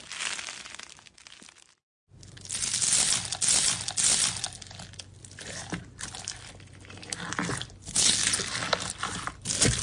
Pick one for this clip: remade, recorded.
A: recorded